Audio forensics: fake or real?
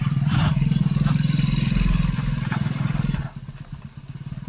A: fake